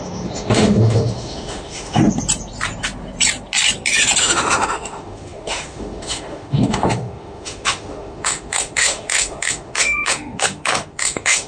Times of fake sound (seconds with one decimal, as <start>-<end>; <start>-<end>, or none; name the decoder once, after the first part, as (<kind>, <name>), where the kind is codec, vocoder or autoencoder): 0.0-2.0 (autoencoder, DAC-VAE); 4.2-11.5